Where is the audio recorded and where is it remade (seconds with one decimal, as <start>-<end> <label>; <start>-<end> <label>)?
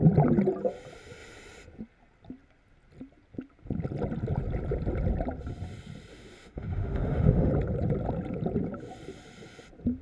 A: 0.0-6.1 recorded; 6.1-7.5 remade; 7.5-10.0 recorded